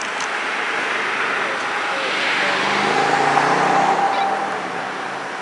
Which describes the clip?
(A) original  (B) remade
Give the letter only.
A